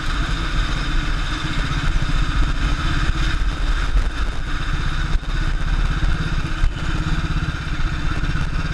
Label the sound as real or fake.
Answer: real